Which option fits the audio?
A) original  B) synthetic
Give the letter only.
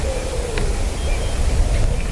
A